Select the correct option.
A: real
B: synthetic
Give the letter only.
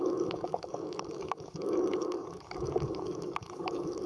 B